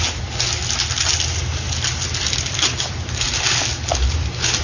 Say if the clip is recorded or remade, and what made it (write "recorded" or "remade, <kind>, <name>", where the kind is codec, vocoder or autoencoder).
recorded